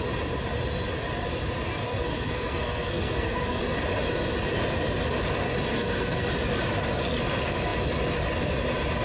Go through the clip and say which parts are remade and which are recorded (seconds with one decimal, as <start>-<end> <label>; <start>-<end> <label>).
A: 0.0-1.9 recorded; 1.9-3.6 remade; 3.6-5.7 recorded; 5.7-6.3 remade; 6.3-9.0 recorded